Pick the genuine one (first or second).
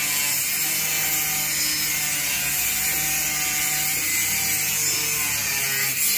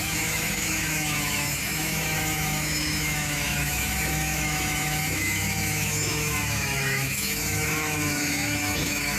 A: first